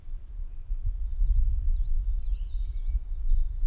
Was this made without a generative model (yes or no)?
no